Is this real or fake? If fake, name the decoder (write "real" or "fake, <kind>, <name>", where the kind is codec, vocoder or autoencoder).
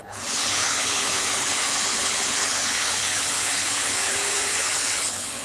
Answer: fake, codec, HILCodec